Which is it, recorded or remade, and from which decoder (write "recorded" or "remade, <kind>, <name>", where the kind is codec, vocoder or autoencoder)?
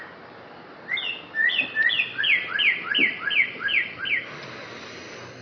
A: recorded